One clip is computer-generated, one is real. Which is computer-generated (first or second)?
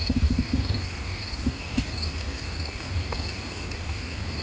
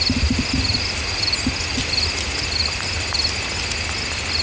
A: first